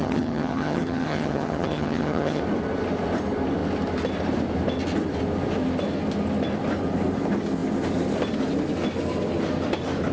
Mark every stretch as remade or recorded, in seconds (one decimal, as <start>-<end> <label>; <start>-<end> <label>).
0.0-2.4 remade; 2.4-10.1 recorded